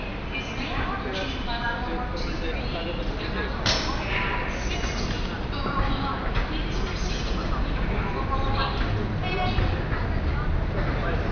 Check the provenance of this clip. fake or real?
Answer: real